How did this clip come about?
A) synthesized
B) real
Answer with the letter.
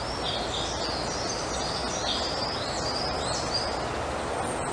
B